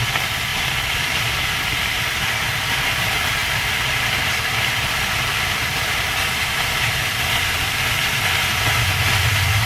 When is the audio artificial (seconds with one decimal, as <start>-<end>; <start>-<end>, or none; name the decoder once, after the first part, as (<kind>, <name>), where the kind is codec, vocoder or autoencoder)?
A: 0.5-2.6 (vocoder, BigVGAN v2); 3.4-6.1